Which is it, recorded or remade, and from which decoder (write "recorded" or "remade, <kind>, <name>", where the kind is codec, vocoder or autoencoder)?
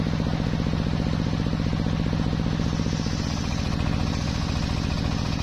recorded